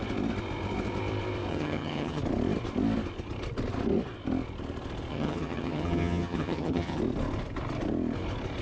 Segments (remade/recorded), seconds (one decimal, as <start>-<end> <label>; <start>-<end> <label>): 0.0-1.5 recorded; 1.5-2.2 remade; 2.2-5.1 recorded; 5.1-7.0 remade; 7.0-8.6 recorded